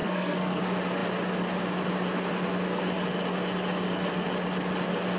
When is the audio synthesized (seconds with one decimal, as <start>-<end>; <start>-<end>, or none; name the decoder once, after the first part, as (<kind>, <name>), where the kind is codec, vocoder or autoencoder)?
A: 0.0-0.6 (codec, SNAC)